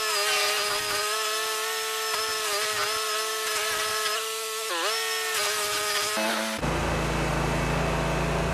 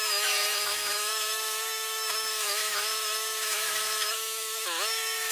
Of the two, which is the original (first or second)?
first